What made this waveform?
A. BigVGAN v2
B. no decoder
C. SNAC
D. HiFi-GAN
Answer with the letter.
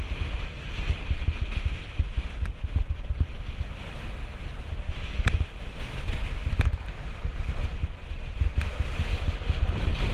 B